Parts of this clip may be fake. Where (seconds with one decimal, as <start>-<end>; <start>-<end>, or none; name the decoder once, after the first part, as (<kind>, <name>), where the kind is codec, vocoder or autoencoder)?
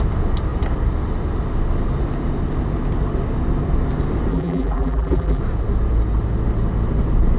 4.3-5.4 (vocoder, BigVGAN v2)